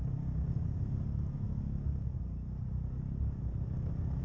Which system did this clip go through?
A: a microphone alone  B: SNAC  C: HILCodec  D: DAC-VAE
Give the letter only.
A